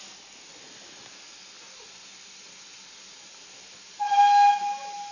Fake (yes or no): no